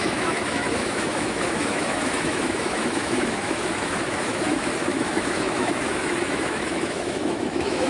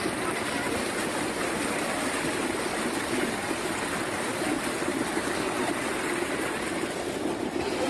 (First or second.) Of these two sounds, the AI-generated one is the first